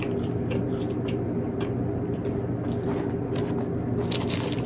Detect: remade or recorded recorded